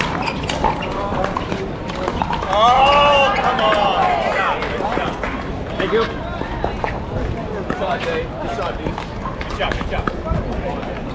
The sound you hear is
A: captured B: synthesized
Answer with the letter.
A